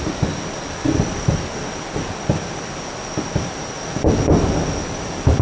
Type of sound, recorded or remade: recorded